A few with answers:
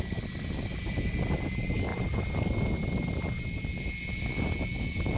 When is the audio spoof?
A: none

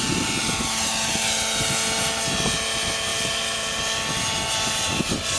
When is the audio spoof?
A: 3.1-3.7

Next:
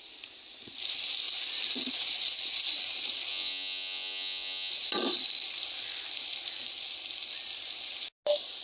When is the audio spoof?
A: 3.3-4.7